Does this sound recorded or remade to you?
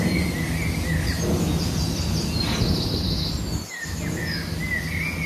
recorded